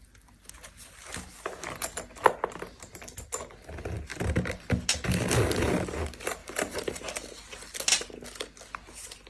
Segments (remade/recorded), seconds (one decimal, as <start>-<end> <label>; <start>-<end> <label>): 0.0-6.4 recorded; 6.4-7.0 remade; 7.0-9.3 recorded